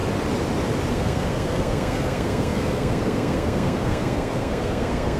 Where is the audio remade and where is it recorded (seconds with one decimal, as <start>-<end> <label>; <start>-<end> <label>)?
0.0-0.9 recorded; 0.9-5.2 remade